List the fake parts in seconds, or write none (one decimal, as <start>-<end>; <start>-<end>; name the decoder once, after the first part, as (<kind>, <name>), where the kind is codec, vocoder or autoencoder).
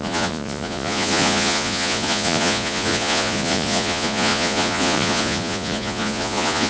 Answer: 0.0-6.7 (vocoder, Vocos)